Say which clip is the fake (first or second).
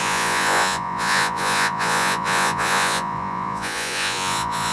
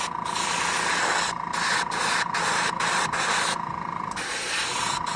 first